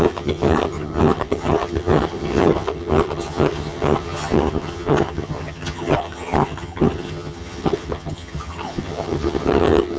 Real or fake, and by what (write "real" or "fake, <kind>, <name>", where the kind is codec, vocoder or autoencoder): fake, vocoder, HiFi-GAN